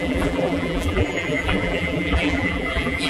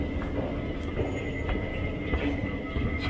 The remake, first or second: first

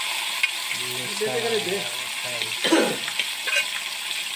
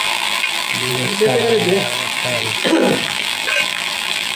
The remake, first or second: second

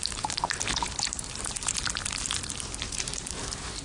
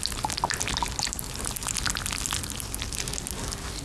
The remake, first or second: first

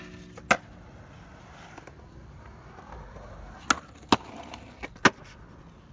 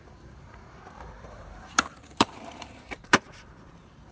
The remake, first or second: second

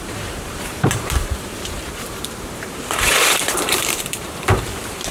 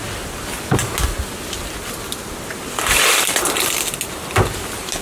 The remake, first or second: first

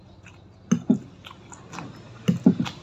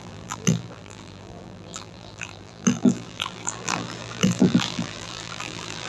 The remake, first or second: second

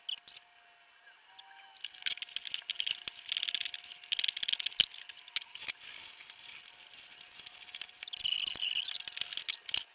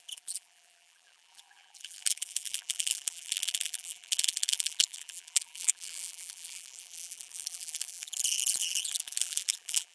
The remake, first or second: second